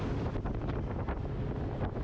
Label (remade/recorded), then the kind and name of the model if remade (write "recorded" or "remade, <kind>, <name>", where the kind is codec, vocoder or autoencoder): recorded